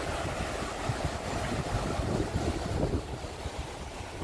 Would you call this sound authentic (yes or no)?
yes